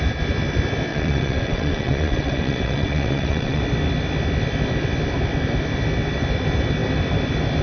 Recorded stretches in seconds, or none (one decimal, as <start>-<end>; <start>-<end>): 0.0-0.9; 3.6-7.6